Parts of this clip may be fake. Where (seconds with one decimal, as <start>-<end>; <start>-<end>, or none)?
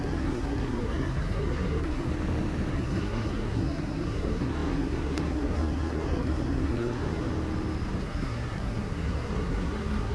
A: 0.0-2.1; 2.7-7.3; 8.0-10.1